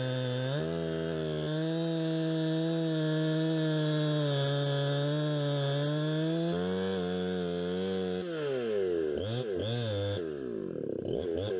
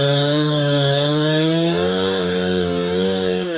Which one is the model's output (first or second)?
second